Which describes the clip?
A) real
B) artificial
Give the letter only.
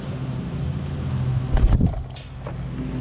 A